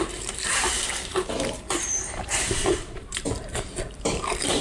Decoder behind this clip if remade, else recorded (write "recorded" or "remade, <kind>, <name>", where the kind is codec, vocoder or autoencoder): remade, vocoder, BigVGAN v2